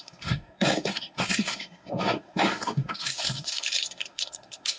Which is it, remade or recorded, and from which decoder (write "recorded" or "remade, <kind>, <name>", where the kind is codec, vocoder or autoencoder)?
remade, codec, SNAC